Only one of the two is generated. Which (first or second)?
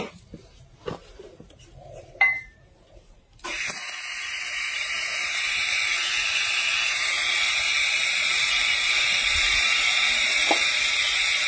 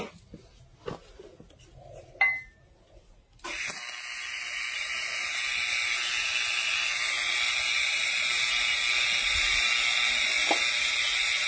first